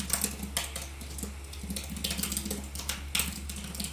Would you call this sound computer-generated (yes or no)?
no